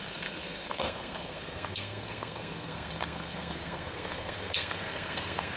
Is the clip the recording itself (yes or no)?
no